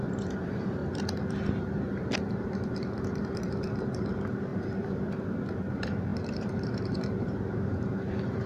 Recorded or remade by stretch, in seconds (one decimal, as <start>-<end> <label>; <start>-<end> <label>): 0.0-0.8 remade; 0.8-2.2 recorded; 2.2-8.5 remade